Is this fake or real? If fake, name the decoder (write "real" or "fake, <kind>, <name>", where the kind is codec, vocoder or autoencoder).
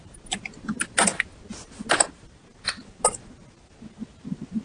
real